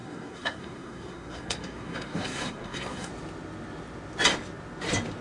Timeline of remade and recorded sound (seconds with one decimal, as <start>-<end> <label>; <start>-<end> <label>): 0.0-3.1 remade; 3.1-5.2 recorded